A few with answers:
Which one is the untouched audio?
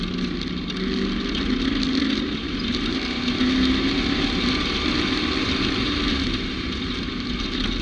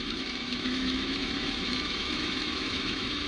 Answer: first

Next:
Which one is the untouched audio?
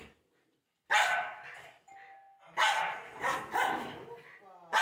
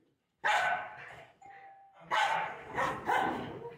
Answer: first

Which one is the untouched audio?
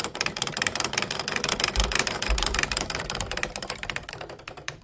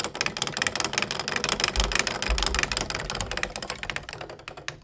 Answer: second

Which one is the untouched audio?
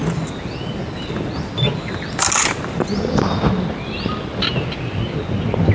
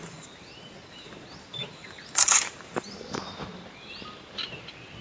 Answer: first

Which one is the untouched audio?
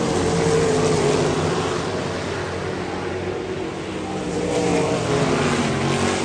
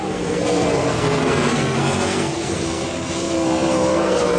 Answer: first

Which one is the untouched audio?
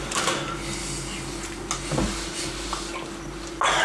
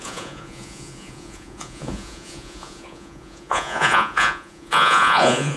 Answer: first